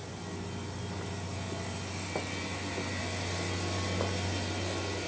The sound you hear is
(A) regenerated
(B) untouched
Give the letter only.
B